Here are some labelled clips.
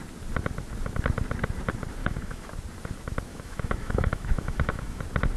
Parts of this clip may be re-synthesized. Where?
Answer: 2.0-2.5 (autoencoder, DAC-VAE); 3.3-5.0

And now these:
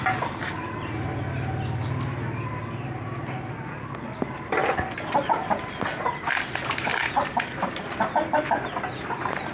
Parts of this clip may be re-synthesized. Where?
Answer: none

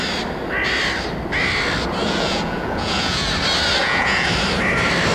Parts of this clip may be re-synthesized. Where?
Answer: 2.0-3.3 (vocoder, Vocos); 3.8-4.3